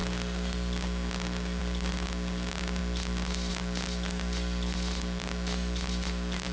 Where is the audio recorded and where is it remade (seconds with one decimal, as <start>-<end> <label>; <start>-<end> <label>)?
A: 0.0-6.5 recorded